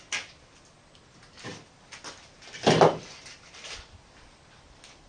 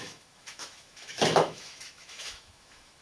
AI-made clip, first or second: second